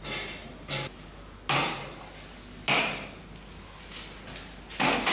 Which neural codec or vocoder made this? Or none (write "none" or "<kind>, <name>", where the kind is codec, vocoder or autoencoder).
none